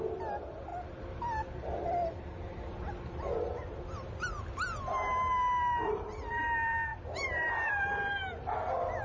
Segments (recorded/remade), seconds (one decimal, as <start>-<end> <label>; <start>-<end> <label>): 0.0-6.9 recorded; 6.9-8.1 remade; 8.1-9.0 recorded